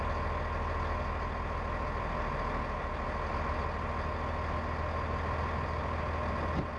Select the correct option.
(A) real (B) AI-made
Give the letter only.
A